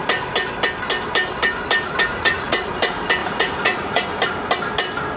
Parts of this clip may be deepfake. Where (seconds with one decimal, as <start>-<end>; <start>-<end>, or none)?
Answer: 2.1-2.7; 3.2-4.1